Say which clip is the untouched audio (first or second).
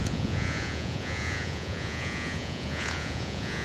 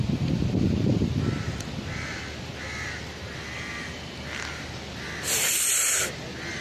second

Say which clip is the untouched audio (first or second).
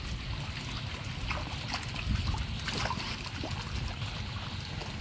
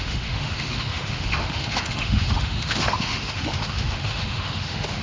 first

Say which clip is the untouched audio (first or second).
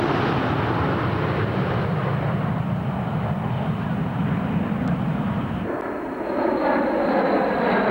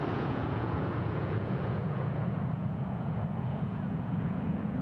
first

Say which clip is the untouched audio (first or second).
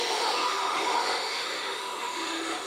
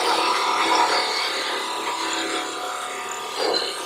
second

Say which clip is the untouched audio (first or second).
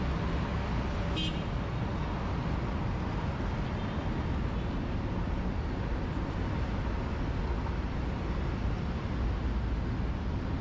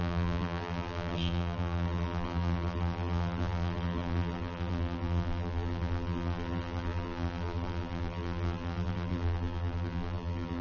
first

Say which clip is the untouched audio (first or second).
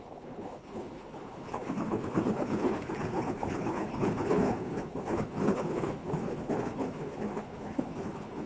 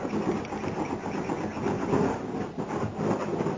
second